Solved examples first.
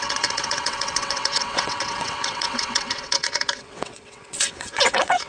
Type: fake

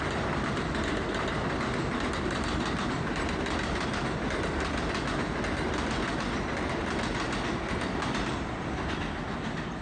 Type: real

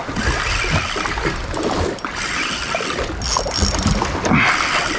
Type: real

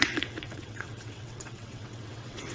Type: fake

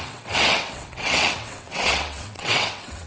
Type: fake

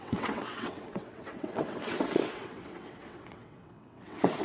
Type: fake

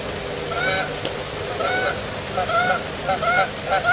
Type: real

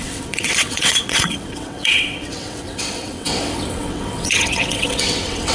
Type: fake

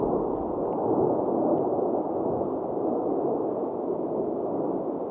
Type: real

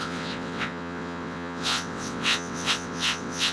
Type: fake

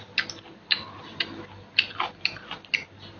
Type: real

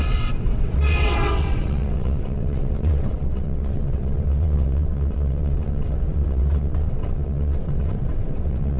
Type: fake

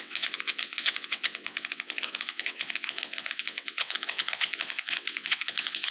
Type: fake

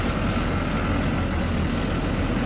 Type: real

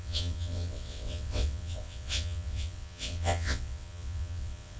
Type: fake